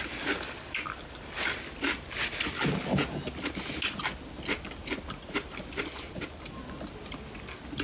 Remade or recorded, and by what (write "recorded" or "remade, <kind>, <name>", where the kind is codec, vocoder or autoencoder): recorded